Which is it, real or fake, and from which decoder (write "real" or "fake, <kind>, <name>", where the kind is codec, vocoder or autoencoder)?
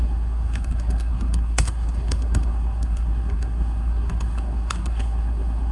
fake, codec, SNAC